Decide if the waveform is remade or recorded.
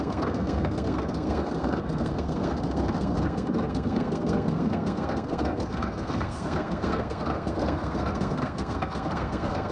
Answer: remade